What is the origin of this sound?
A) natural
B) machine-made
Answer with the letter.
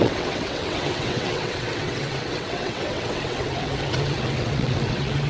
B